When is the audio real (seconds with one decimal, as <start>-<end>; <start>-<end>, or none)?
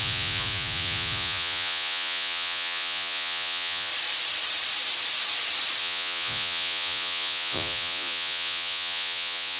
3.9-5.8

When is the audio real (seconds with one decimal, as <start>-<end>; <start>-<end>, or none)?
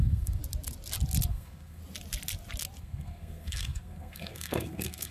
0.4-1.3; 1.8-2.8